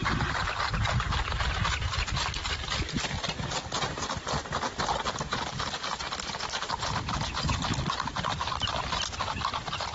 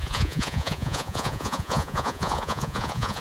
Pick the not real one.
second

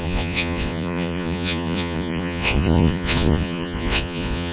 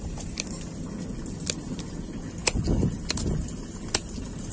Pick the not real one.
first